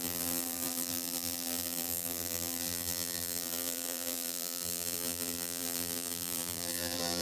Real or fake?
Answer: fake